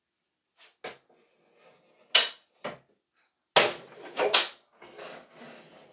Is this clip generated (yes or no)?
no